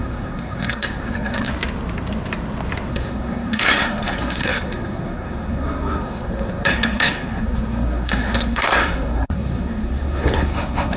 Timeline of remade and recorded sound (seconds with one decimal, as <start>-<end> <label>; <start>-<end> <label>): 0.0-1.5 remade; 1.5-2.9 recorded; 2.9-11.0 remade

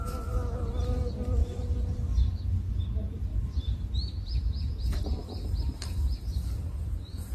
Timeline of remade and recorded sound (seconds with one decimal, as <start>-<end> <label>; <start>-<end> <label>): 0.0-1.4 recorded; 1.4-2.8 remade; 2.8-3.3 recorded; 3.3-6.7 remade; 6.7-7.3 recorded

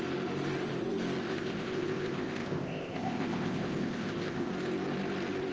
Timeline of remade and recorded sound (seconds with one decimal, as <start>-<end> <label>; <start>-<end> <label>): 0.0-1.2 recorded; 1.2-4.5 remade; 4.5-5.5 recorded

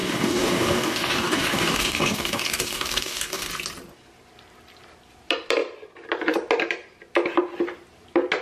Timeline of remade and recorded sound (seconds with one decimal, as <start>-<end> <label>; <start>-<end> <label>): 0.0-3.5 remade; 3.5-8.4 recorded

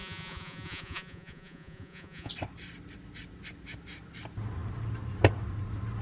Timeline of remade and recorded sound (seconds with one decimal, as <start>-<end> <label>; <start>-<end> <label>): 0.0-2.3 remade; 2.3-6.0 recorded

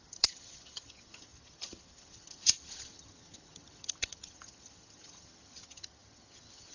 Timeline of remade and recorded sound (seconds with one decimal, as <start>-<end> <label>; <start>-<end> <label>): 0.0-6.7 remade

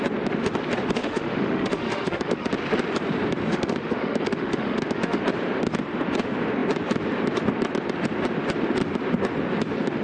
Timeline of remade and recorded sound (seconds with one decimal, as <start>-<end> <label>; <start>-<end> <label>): 0.0-1.0 recorded; 1.0-2.5 remade; 2.5-3.5 recorded; 3.5-5.2 remade; 5.2-10.0 recorded